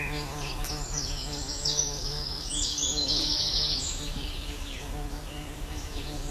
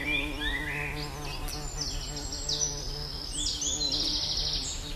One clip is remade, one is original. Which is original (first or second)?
second